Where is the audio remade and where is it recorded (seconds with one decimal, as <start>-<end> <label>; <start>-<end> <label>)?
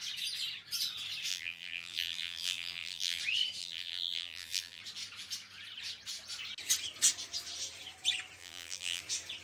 0.0-1.3 recorded; 1.3-3.2 remade; 3.2-3.6 recorded; 3.6-4.8 remade; 4.8-8.4 recorded; 8.4-9.0 remade; 9.0-9.4 recorded